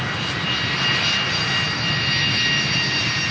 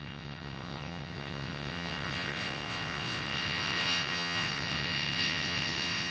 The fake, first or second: second